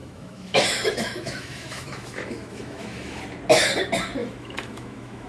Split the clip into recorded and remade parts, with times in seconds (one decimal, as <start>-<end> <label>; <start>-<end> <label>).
0.0-3.2 remade; 3.2-4.2 recorded; 4.2-5.3 remade